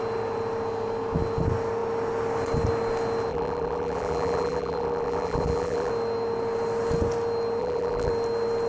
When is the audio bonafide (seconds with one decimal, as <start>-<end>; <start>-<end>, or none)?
0.0-3.3; 5.9-7.6; 8.1-8.7